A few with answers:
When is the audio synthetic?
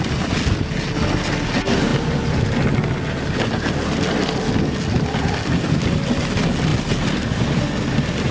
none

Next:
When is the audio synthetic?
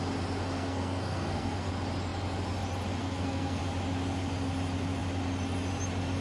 0.4-1.7 (codec, SNAC); 3.0-3.6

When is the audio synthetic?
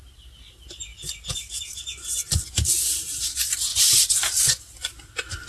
none